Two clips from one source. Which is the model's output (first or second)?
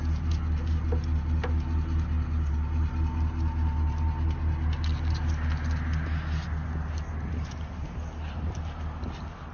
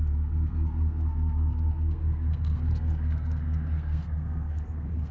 second